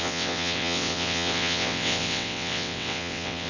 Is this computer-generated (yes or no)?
yes